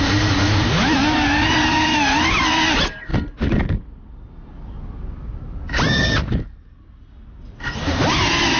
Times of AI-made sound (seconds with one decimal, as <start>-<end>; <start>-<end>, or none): none